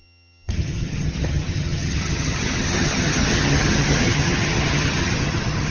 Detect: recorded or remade remade